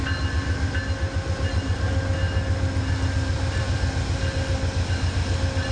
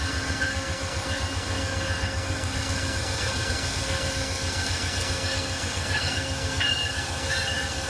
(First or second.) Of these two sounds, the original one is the first